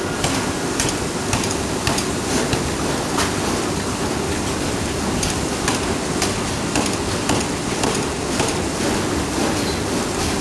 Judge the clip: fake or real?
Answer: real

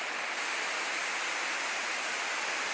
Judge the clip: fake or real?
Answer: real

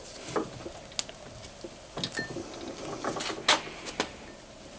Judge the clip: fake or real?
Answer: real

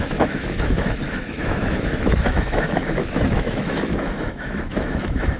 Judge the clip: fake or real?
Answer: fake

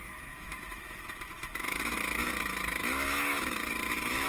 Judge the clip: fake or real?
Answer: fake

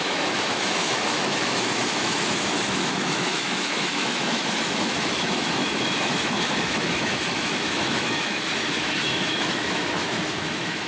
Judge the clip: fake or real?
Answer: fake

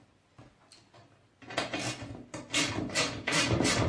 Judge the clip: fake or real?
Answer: real